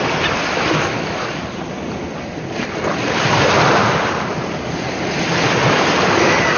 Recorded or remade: recorded